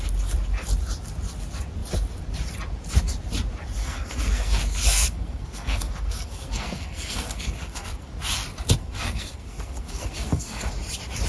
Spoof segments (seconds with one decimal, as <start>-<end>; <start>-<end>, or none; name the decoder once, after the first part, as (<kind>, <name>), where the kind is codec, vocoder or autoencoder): 3.8-8.1 (codec, SNAC); 8.8-10.7